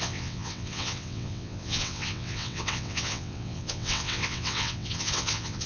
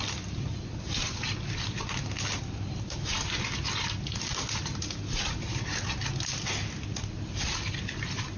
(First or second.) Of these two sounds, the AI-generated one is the first